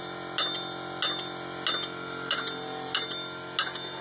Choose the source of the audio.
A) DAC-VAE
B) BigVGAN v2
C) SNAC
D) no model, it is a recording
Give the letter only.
D